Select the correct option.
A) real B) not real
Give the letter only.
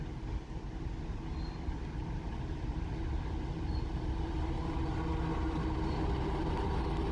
A